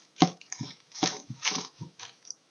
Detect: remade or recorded remade